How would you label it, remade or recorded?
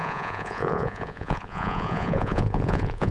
remade